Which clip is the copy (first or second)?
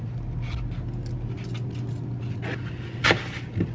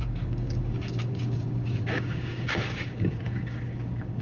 second